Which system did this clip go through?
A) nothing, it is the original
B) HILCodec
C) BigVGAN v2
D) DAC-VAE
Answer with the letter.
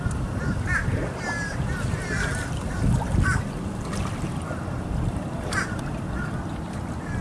A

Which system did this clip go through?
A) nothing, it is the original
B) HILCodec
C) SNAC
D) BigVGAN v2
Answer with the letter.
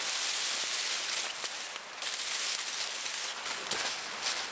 A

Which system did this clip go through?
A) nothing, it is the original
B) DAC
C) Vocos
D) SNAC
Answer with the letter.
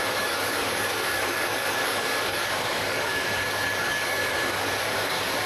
B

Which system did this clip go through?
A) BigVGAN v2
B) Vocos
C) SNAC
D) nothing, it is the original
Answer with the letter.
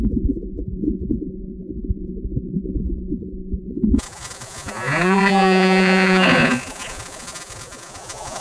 B